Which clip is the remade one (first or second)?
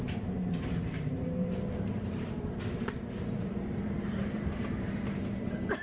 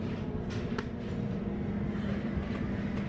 first